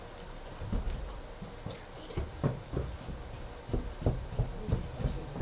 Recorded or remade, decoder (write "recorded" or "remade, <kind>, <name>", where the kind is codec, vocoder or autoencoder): recorded